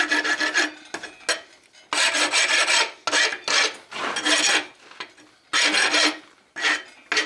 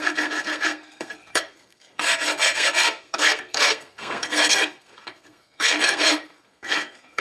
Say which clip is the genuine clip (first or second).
first